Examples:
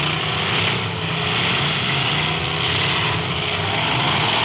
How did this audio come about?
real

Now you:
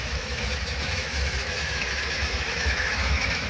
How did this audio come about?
fake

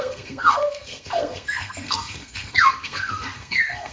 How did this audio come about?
fake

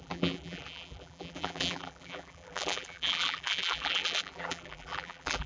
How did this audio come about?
fake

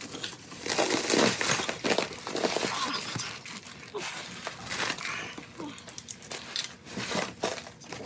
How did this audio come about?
real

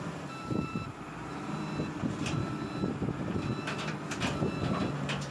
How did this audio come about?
real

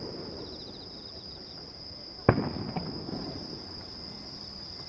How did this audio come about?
real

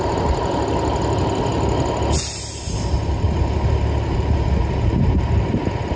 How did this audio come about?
real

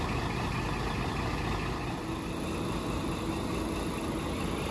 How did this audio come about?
real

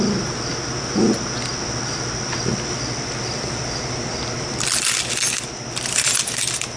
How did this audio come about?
real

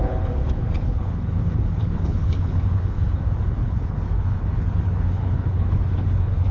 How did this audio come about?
fake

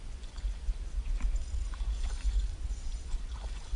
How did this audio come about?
fake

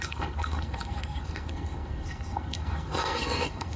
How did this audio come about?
fake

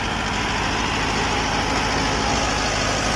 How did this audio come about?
real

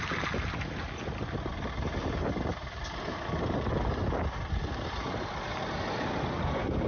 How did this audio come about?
real